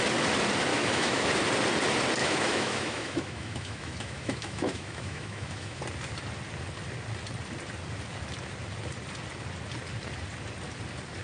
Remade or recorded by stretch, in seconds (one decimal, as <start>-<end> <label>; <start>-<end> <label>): 0.0-0.7 recorded; 0.7-1.3 remade; 1.3-2.2 recorded; 2.2-5.8 remade; 5.8-11.2 recorded